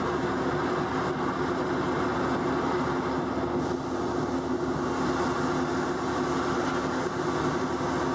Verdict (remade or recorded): recorded